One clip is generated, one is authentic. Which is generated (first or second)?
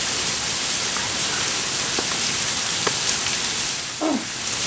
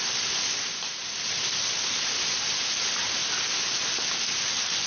first